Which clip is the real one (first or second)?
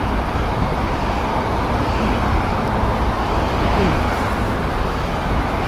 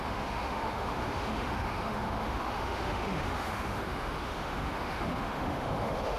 first